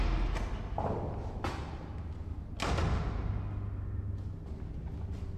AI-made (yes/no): no